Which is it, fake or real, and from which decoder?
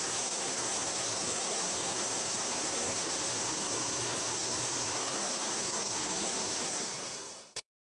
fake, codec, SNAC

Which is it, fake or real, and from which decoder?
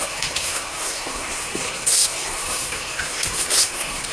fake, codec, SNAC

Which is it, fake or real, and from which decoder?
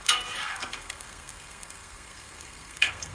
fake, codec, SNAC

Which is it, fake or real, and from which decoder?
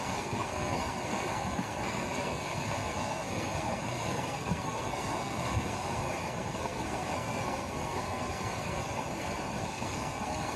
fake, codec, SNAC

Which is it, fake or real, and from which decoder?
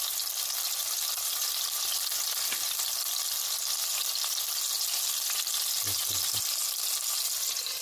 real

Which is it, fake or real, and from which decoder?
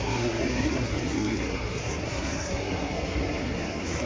fake, codec, SNAC